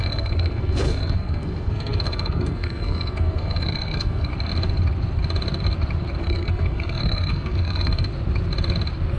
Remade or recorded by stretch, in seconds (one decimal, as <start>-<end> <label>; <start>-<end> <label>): 0.0-4.3 remade; 4.3-6.2 recorded; 6.2-8.1 remade; 8.1-9.2 recorded